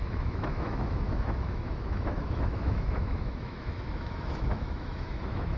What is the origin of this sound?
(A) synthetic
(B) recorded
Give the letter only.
A